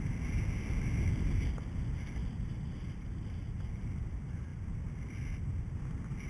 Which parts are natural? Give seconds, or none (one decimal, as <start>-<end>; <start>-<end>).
0.0-6.3